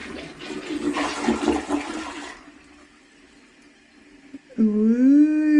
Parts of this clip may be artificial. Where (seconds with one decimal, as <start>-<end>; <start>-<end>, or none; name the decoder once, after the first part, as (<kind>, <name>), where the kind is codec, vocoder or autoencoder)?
none